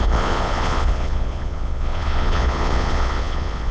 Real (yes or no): no